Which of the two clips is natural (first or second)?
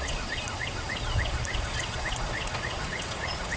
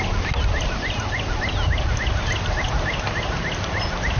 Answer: second